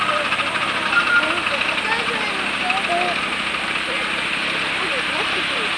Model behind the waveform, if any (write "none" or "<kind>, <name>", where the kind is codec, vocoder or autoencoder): none